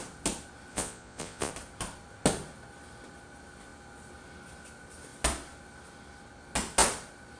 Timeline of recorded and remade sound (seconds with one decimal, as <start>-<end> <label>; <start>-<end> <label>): 0.0-0.7 recorded; 0.7-1.5 remade; 1.5-7.4 recorded